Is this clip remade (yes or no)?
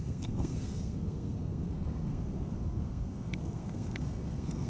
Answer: yes